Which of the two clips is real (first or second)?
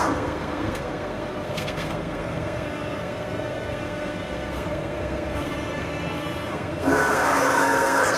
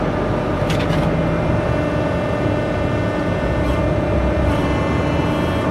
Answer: second